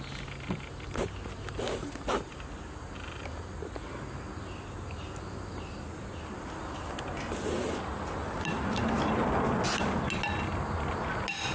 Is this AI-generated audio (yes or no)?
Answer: no